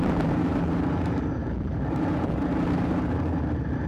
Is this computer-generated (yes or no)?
yes